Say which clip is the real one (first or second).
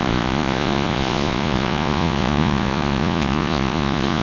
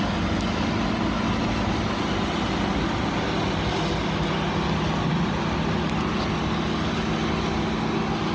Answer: second